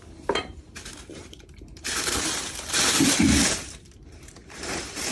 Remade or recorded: remade